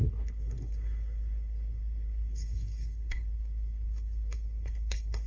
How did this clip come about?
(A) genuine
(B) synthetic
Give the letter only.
B